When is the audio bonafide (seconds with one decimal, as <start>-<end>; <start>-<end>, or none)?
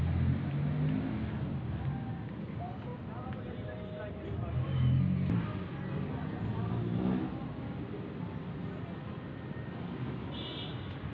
0.0-11.1